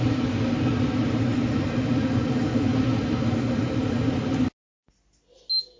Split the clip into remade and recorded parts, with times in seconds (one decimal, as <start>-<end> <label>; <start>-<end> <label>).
0.0-5.8 recorded